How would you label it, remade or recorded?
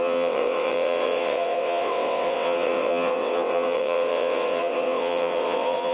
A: remade